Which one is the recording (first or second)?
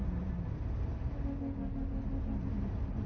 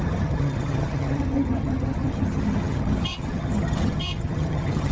first